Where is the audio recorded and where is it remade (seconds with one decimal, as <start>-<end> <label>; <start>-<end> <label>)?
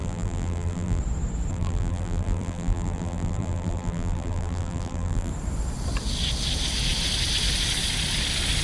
0.0-1.0 remade; 1.0-1.5 recorded; 1.5-5.3 remade; 5.3-8.6 recorded